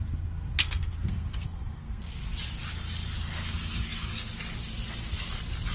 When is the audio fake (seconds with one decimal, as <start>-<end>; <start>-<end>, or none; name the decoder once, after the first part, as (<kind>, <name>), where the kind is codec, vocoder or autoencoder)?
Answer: 0.6-2.0 (codec, SNAC)